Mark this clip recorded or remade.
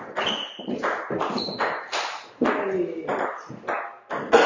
recorded